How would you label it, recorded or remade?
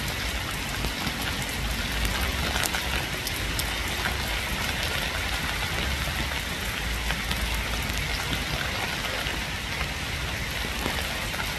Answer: recorded